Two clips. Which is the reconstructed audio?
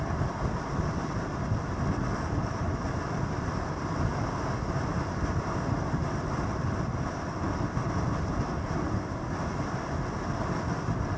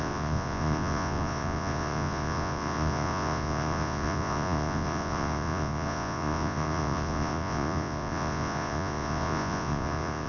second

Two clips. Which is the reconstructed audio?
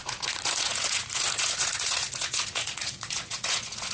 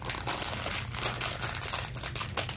first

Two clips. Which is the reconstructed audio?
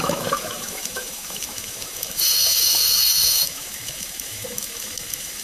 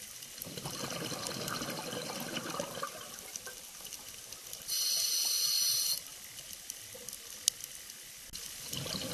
first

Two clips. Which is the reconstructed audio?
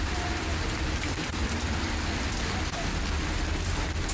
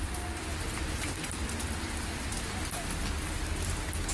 first